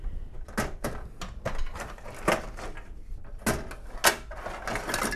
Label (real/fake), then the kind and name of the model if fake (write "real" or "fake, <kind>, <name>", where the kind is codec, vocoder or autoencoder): real